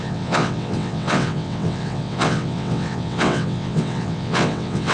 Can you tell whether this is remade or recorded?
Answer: remade